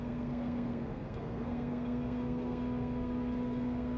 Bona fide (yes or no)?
no